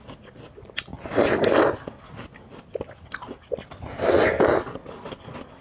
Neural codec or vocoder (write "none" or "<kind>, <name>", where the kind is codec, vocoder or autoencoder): none